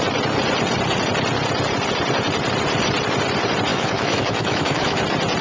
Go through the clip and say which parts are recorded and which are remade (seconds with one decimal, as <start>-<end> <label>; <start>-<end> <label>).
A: 0.0-3.7 recorded; 3.7-5.0 remade; 5.0-5.4 recorded